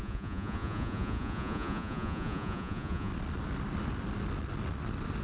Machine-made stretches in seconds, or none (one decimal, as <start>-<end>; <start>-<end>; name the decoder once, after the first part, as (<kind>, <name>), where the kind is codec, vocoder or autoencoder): 0.0-3.1 (vocoder, Vocos)